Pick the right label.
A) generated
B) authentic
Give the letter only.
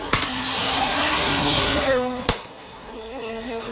A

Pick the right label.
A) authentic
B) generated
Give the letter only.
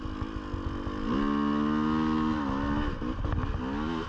A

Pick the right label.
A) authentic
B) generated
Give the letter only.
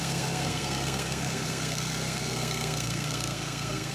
B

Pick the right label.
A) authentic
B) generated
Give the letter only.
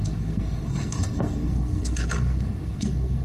B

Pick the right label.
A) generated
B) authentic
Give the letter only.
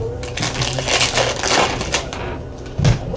B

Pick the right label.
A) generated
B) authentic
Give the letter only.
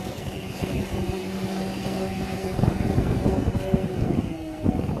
A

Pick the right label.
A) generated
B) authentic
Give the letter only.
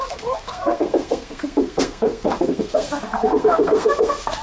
A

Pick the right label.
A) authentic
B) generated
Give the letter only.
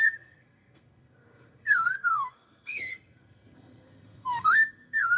B